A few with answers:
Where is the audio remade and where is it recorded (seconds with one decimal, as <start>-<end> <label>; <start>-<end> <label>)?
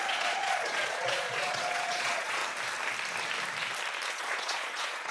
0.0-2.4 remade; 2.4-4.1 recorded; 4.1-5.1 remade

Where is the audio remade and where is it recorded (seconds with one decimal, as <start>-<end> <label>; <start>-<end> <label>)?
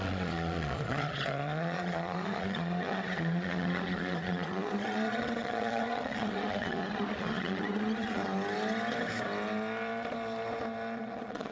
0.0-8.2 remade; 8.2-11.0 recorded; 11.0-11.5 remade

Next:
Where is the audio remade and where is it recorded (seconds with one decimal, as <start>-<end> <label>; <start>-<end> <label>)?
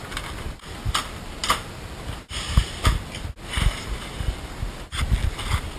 0.0-5.8 recorded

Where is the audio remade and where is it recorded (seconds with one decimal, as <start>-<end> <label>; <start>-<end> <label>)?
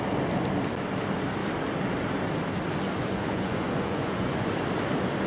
0.0-3.0 recorded; 3.0-4.5 remade; 4.5-5.3 recorded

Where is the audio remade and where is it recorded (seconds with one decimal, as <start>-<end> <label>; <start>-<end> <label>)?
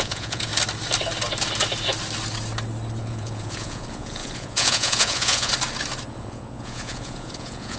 0.0-0.5 remade; 0.5-3.0 recorded; 3.0-5.5 remade; 5.5-6.1 recorded; 6.1-7.8 remade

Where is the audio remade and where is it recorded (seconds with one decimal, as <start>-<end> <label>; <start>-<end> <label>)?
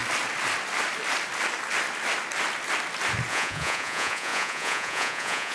0.0-3.3 recorded; 3.3-5.5 remade